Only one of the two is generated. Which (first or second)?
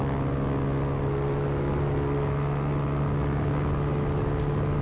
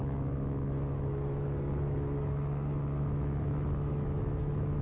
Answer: second